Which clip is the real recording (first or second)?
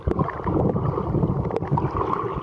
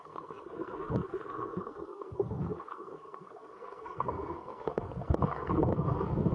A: first